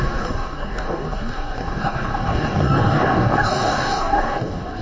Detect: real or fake fake